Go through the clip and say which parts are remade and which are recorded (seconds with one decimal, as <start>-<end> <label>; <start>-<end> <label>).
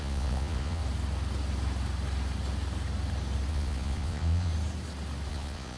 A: 0.0-0.8 remade; 0.8-3.5 recorded; 3.5-4.5 remade; 4.5-5.3 recorded; 5.3-5.8 remade